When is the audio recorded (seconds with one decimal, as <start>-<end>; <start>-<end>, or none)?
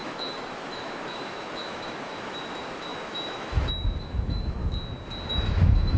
4.6-5.3